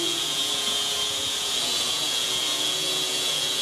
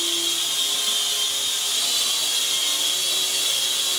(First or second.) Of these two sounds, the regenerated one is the first